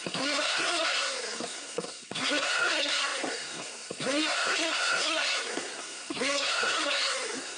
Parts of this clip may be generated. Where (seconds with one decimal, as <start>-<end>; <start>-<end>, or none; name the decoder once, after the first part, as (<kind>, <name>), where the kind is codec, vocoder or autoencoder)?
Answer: 0.0-7.6 (codec, SNAC)